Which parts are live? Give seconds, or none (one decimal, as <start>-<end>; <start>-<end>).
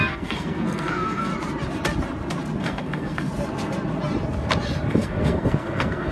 1.3-2.6; 3.3-4.9